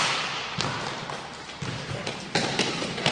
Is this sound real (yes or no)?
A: yes